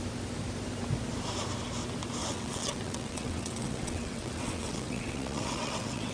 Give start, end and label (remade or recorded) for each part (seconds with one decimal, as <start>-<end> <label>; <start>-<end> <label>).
0.0-2.2 recorded; 2.2-6.1 remade